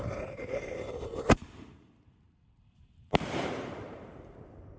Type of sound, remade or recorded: remade